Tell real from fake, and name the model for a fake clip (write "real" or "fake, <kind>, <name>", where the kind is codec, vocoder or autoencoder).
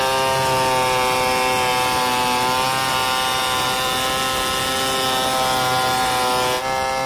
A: real